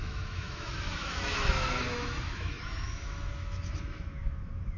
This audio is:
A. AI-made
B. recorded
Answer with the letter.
A